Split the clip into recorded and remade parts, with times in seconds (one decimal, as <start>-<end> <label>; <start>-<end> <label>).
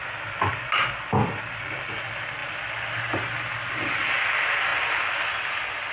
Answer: 0.0-5.9 recorded